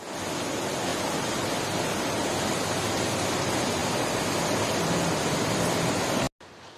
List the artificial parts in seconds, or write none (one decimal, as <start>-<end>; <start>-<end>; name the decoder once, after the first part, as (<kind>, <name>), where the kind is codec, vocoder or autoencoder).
none